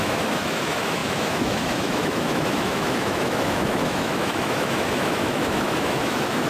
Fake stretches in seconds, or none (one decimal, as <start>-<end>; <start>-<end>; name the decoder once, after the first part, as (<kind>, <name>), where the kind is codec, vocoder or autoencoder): 0.0-6.5 (autoencoder, DAC-VAE)